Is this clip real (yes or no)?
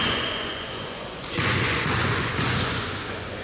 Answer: no